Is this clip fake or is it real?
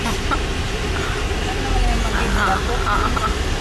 real